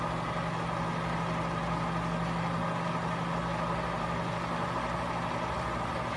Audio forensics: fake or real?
real